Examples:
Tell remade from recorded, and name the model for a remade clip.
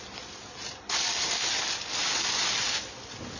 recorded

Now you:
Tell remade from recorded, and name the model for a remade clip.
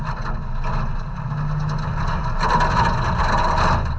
recorded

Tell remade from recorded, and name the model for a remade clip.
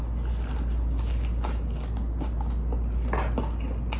recorded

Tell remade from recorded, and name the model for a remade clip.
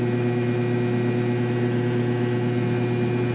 recorded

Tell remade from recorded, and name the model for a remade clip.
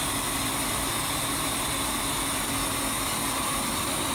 recorded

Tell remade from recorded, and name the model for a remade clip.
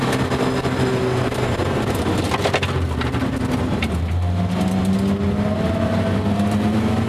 recorded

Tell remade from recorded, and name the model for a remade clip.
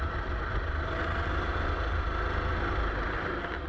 recorded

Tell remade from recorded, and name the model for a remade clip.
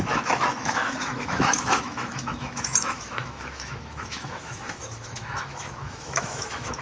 remade, autoencoder, DAC-VAE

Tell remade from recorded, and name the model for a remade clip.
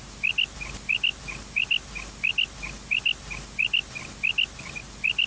recorded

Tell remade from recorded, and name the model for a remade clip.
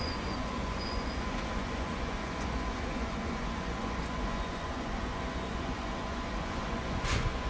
remade, vocoder, Vocos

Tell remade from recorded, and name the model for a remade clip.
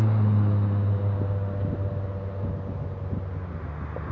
recorded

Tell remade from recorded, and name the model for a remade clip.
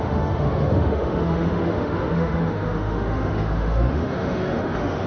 remade, autoencoder, DAC-VAE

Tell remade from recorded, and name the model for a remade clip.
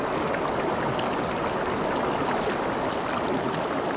recorded